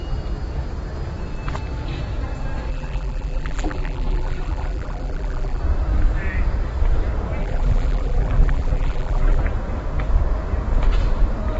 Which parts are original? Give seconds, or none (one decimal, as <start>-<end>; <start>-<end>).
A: 0.0-2.7; 5.6-7.4; 9.4-11.6